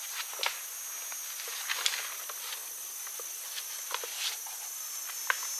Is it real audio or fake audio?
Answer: real